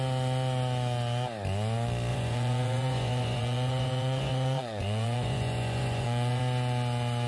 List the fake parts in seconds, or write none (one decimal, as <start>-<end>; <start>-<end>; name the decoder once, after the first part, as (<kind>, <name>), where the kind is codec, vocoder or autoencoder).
2.1-6.4 (vocoder, Vocos)